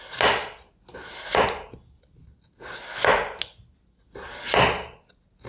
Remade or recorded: recorded